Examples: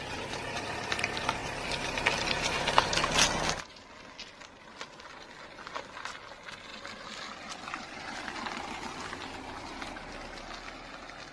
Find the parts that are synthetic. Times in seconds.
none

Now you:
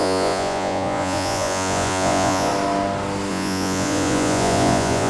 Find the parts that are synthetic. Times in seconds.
0.0-2.5; 3.3-5.1

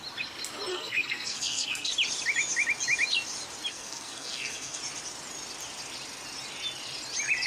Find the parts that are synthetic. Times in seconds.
0.7-1.9; 3.7-4.8

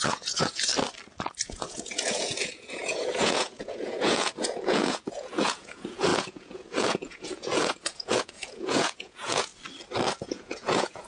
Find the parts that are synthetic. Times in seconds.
0.0-0.7; 1.4-9.5; 10.2-11.1

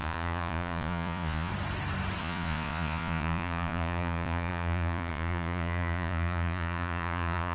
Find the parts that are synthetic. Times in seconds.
0.0-1.5; 2.2-7.5

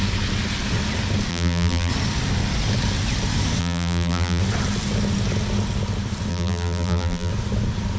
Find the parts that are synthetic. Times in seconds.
1.3-1.9; 3.6-4.4; 6.3-7.3

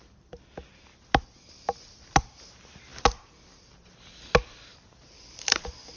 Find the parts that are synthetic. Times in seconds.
4.7-5.6

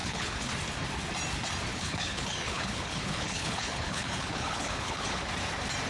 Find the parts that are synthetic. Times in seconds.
0.0-0.5; 1.7-5.2